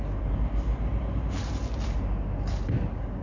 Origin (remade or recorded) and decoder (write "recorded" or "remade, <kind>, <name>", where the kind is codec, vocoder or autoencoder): recorded